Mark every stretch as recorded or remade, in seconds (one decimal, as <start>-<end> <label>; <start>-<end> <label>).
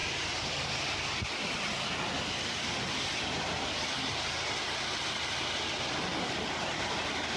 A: 0.0-7.4 recorded